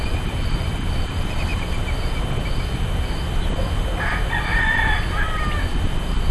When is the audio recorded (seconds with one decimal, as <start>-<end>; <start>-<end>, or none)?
0.0-6.3